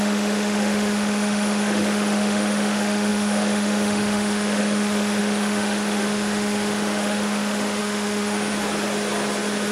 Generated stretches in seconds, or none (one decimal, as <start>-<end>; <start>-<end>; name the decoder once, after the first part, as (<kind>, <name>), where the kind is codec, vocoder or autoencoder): 0.0-8.5 (autoencoder, DAC-VAE)